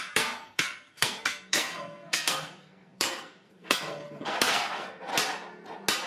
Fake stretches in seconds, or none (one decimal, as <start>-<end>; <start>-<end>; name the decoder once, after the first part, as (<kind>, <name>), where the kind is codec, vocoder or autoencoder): 0.0-5.1 (codec, SNAC)